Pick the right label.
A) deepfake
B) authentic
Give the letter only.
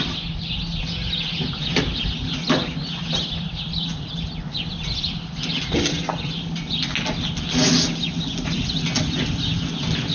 B